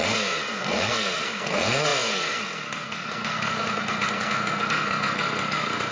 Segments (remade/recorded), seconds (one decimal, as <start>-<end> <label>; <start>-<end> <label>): 0.0-5.9 remade